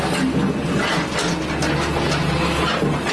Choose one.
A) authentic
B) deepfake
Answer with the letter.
A